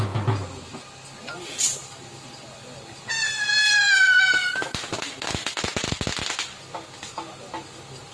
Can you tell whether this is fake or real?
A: real